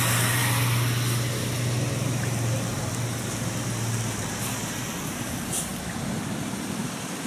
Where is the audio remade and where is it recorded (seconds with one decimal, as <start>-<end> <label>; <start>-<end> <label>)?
0.0-7.3 recorded